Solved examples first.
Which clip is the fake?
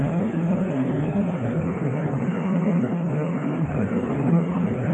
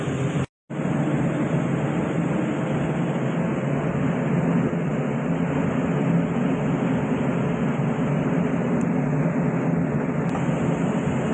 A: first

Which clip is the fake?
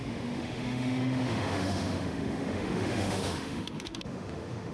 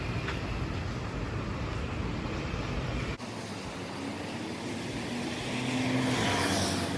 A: first